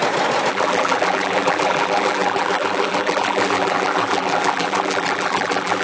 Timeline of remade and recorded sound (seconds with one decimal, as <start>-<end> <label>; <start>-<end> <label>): 0.0-0.5 recorded; 0.5-5.8 remade